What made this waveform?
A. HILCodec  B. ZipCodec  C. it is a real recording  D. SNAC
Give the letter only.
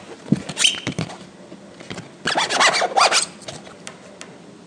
C